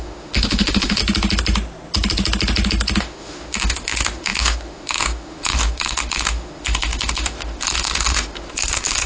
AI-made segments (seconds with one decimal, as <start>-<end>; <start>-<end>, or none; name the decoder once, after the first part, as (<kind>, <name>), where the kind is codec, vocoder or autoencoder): 0.0-1.0 (autoencoder, DAC-VAE); 3.0-9.1